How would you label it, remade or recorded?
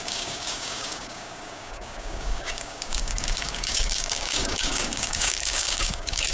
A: remade